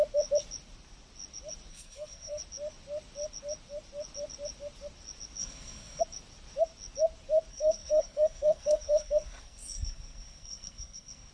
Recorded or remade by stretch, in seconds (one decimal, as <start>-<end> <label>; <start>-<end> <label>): 0.0-1.7 recorded; 1.7-2.4 remade; 2.4-5.4 recorded; 5.4-6.0 remade; 6.0-7.5 recorded; 7.5-11.3 remade